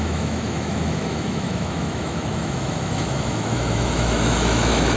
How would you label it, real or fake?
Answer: fake